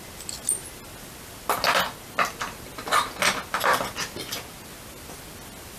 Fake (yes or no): no